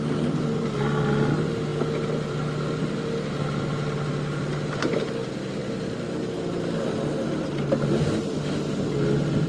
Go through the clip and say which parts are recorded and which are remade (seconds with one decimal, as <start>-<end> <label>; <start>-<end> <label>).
0.0-9.5 recorded